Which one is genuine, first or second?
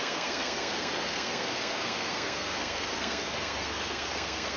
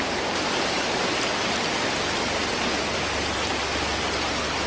second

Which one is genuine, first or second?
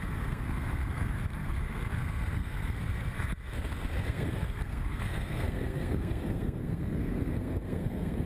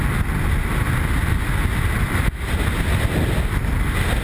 second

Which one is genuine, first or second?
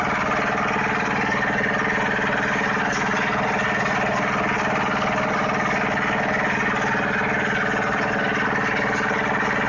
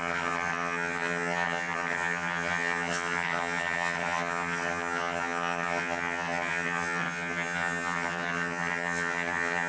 first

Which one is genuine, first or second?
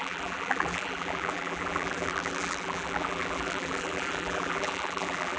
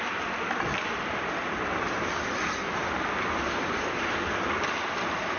second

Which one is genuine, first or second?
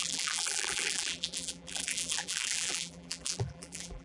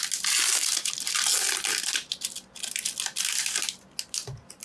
second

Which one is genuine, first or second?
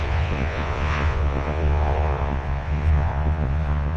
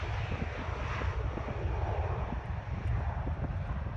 second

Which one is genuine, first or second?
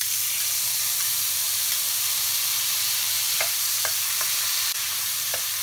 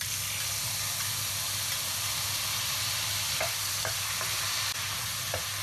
second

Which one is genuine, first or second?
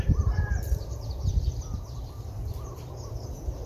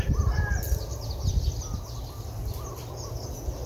second